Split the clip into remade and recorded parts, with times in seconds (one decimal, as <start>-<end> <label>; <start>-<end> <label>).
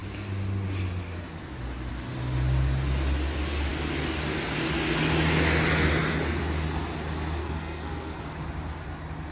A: 0.0-7.4 recorded; 7.4-8.2 remade; 8.2-9.3 recorded